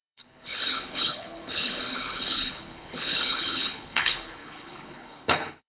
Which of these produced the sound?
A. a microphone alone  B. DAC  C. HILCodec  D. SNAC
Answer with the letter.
C